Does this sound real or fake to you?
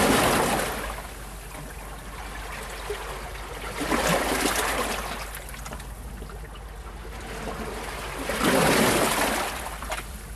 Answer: real